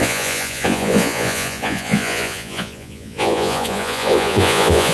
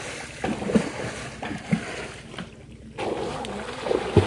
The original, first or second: second